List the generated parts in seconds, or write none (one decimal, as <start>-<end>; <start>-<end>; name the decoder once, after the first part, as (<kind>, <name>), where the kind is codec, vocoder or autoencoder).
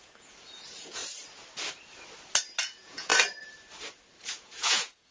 0.0-1.0 (vocoder, Vocos); 2.6-3.1; 4.2-5.1